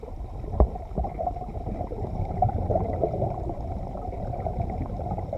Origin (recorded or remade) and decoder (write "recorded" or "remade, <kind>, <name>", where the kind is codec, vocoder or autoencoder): remade, vocoder, BigVGAN v2